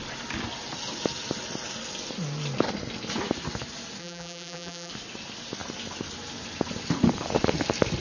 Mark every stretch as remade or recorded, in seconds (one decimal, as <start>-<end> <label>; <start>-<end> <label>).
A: 0.0-4.0 recorded; 4.0-4.9 remade; 4.9-8.0 recorded